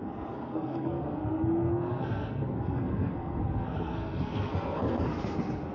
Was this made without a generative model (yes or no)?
no